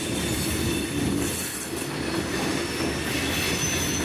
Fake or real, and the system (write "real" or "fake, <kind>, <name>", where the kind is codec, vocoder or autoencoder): real